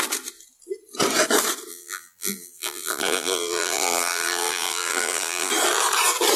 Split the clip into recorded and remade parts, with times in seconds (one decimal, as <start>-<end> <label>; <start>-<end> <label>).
0.0-1.7 recorded; 1.7-5.5 remade; 5.5-6.4 recorded